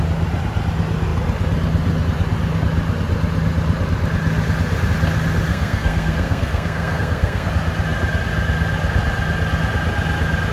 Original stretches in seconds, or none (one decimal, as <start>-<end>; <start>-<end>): 0.0-5.5; 7.5-10.5